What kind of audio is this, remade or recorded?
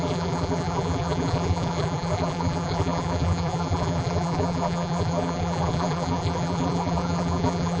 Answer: remade